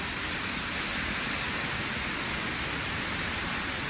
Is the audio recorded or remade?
recorded